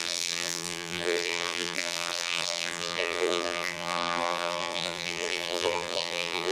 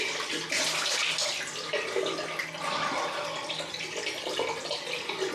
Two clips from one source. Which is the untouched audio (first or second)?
second